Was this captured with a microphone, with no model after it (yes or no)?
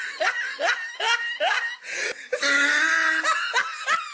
yes